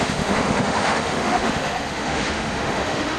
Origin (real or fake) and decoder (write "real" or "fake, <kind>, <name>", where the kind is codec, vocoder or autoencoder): fake, autoencoder, DAC-VAE